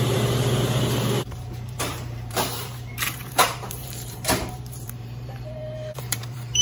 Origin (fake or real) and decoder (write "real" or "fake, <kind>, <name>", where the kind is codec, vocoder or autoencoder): fake, vocoder, BigVGAN v2